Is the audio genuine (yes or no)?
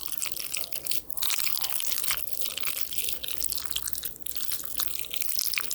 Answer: yes